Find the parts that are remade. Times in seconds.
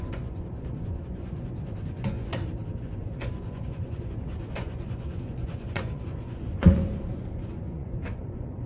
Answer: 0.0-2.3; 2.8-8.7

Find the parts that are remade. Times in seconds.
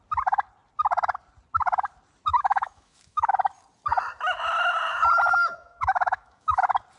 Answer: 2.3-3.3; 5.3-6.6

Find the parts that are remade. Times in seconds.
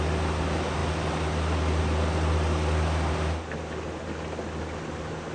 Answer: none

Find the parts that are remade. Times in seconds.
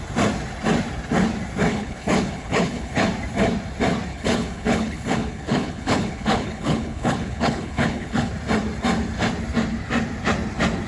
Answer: 1.7-3.1; 4.1-8.3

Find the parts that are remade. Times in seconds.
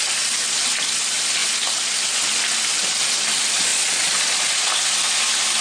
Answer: 3.7-4.7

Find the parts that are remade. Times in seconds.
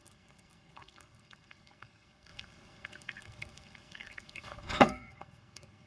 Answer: 0.0-5.9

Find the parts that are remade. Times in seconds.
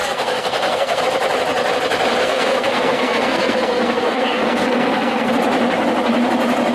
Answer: 0.0-1.0; 2.2-5.3